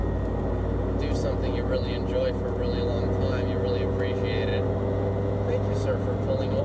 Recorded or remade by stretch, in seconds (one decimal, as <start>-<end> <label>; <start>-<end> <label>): 0.0-6.6 recorded